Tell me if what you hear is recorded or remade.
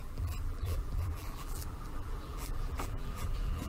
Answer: remade